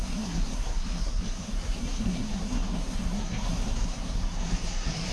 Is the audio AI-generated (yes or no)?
yes